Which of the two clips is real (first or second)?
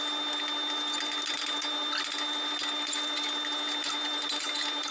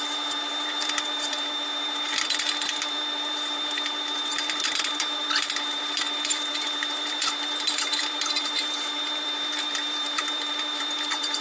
first